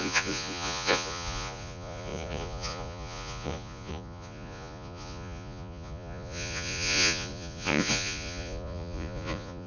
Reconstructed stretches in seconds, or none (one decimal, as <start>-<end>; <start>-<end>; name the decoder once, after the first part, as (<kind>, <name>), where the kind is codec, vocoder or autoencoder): 0.0-9.7 (vocoder, Vocos)